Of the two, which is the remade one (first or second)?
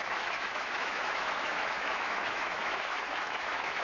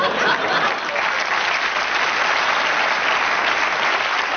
first